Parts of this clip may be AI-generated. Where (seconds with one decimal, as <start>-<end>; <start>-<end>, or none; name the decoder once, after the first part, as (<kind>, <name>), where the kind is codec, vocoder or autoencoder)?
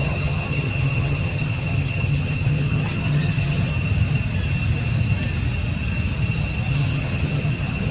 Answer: 0.0-3.7 (vocoder, HiFi-GAN); 6.7-7.9